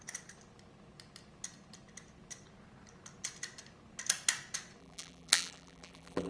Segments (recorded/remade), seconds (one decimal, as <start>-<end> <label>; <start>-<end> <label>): 0.0-4.8 recorded; 4.8-6.3 remade